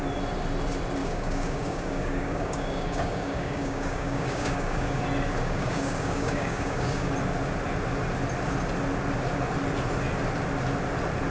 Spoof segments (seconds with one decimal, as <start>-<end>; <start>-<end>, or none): 1.0-5.0; 5.4-7.1